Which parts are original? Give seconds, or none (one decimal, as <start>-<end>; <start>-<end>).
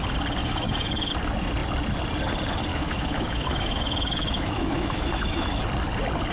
0.0-0.4; 1.1-2.7; 5.6-6.3